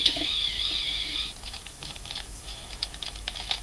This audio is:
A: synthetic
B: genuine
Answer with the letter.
A